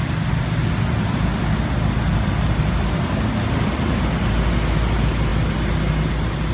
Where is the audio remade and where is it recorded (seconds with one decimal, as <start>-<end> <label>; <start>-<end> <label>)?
0.0-6.5 recorded